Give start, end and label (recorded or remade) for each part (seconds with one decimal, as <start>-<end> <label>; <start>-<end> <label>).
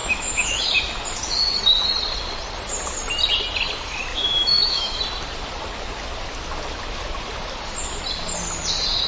0.0-0.8 remade; 0.8-4.1 recorded; 4.1-5.0 remade; 5.0-9.1 recorded